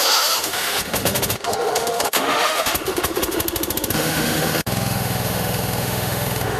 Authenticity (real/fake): fake